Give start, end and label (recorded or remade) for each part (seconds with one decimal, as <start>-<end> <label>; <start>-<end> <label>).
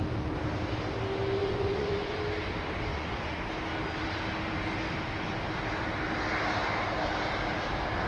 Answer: 0.0-1.4 recorded; 1.4-2.2 remade; 2.2-2.9 recorded; 2.9-3.4 remade; 3.4-8.1 recorded